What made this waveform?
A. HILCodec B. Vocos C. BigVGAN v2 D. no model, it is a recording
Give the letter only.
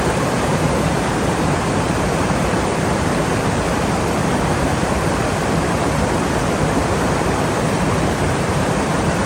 C